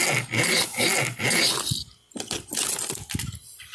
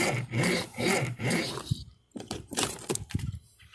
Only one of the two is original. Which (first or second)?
first